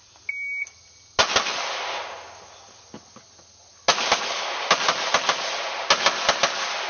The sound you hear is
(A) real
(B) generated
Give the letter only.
A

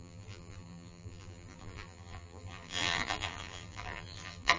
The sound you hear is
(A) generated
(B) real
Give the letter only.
A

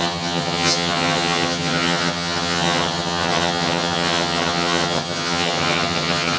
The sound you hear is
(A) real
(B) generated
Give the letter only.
B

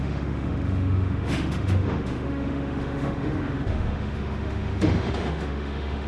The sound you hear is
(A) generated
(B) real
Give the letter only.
A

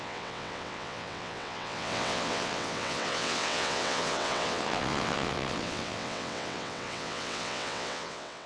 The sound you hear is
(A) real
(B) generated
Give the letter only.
B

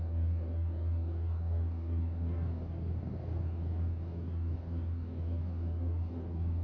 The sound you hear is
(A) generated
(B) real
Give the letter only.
A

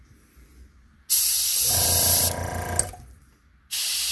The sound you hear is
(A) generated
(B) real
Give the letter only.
B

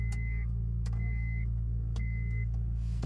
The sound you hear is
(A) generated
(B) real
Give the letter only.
A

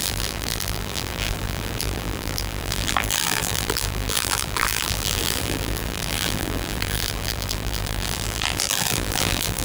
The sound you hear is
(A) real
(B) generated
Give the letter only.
B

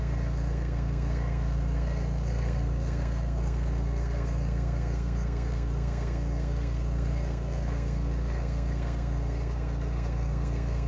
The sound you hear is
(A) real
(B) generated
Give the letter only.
B